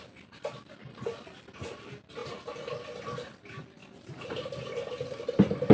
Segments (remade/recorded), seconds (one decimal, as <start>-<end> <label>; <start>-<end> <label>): 0.0-3.8 recorded; 3.8-4.9 remade; 4.9-5.7 recorded